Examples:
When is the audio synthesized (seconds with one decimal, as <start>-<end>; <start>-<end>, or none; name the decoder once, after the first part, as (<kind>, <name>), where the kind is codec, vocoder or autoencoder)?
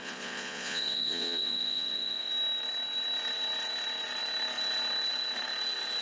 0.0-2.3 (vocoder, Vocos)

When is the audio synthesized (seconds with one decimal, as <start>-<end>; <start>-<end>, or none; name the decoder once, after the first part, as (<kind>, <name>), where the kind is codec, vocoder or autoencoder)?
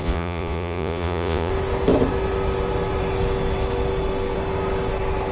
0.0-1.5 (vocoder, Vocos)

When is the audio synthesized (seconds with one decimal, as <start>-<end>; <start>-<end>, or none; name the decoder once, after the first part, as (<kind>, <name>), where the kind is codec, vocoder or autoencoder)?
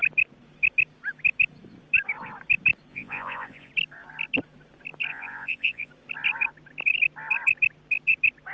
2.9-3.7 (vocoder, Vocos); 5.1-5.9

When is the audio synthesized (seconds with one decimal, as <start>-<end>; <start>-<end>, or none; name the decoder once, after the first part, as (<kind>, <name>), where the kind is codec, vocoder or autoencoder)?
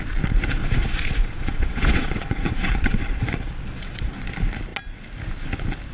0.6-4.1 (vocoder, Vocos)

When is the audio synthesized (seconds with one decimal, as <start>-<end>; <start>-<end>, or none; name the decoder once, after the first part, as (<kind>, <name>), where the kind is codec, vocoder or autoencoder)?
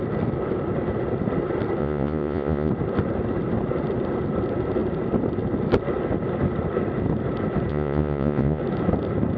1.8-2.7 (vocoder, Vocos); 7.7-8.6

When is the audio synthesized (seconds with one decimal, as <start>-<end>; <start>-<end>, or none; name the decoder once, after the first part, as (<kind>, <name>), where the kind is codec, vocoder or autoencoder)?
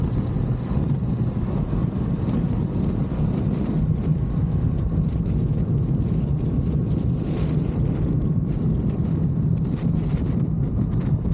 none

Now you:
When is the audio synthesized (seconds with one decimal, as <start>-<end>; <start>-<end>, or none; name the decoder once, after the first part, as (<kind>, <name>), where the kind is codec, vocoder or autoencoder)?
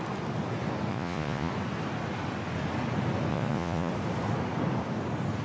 0.9-1.5 (vocoder, Vocos); 3.3-3.9